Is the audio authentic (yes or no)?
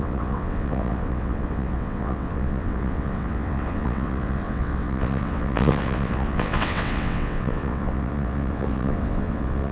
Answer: no